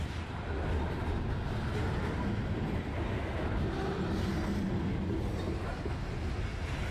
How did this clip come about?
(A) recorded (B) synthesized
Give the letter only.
A